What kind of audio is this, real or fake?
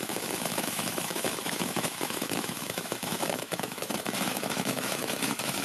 fake